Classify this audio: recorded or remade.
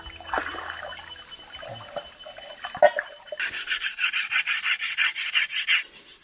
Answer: recorded